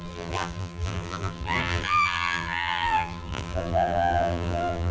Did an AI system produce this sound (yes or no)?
yes